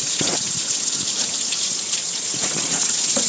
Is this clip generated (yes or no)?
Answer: yes